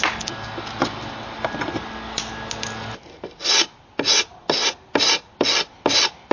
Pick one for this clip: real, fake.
real